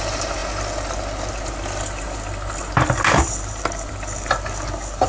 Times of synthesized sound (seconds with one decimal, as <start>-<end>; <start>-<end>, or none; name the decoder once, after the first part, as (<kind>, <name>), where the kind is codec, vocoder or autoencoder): none